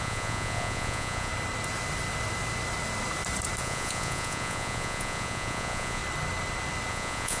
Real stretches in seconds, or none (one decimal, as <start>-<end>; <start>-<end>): 1.3-3.6; 6.0-6.9

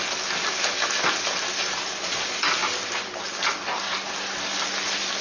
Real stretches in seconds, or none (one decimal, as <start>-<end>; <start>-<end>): 0.0-5.2

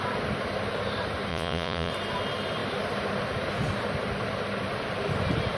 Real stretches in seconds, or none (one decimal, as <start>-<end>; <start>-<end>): 0.0-1.3; 1.9-5.6

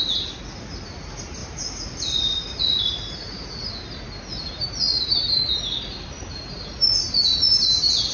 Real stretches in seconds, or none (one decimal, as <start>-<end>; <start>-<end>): 0.0-8.1

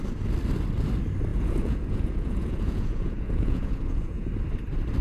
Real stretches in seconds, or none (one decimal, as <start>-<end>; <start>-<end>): 0.0-1.3; 4.3-5.0

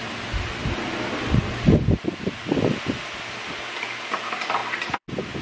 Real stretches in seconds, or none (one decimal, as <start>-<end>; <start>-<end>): 0.0-5.4

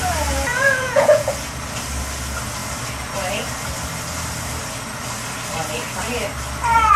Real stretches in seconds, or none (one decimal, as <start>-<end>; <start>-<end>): 0.0-0.5; 1.3-7.0

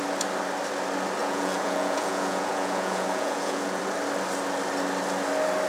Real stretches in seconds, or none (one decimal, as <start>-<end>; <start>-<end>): 0.0-1.2; 3.8-5.7